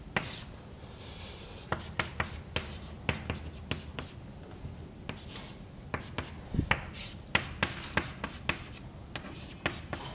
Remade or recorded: recorded